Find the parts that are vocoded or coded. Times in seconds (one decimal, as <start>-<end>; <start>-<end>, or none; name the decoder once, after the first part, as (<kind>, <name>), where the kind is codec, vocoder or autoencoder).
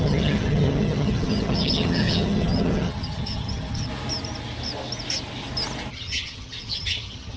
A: 0.0-3.9 (vocoder, HiFi-GAN); 5.9-7.4